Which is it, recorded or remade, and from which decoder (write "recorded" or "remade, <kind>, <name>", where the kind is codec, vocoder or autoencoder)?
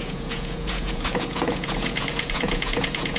remade, vocoder, Vocos